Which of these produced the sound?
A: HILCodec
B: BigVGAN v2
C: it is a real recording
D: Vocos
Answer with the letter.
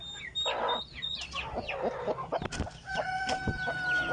C